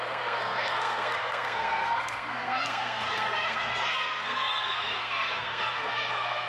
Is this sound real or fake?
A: fake